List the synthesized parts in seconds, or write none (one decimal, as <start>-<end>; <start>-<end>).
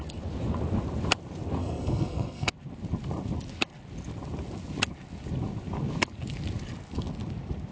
1.6-2.5